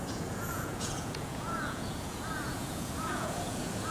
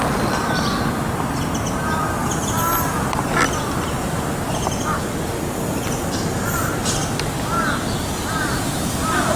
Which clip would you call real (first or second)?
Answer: second